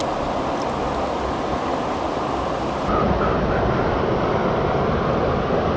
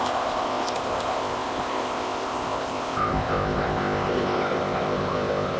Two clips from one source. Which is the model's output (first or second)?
second